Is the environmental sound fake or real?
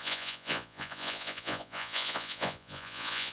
fake